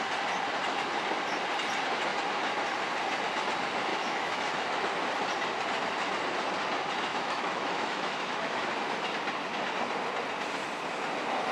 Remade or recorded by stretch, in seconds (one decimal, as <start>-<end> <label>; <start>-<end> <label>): 0.0-3.9 recorded; 3.9-4.9 remade; 4.9-7.1 recorded; 7.1-8.6 remade; 8.6-11.5 recorded